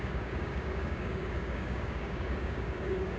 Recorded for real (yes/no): no